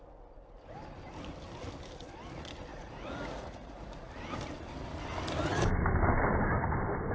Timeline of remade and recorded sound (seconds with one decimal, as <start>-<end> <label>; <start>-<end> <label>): 0.0-2.7 recorded; 2.7-4.1 remade; 4.1-7.1 recorded

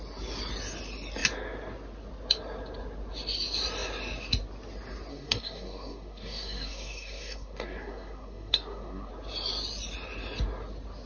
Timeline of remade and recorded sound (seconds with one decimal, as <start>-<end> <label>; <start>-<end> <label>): 0.0-5.1 recorded; 5.1-9.1 remade; 9.1-11.1 recorded

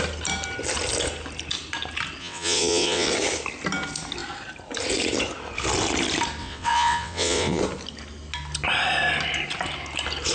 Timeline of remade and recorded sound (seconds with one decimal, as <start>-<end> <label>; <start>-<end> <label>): 0.0-2.2 recorded; 2.2-3.1 remade; 3.1-6.4 recorded; 6.4-7.6 remade; 7.6-10.3 recorded